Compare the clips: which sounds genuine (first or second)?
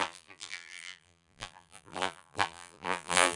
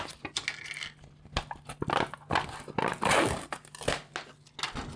second